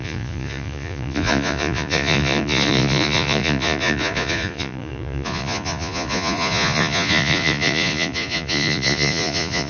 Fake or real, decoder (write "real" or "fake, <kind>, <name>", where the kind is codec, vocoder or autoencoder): fake, vocoder, Vocos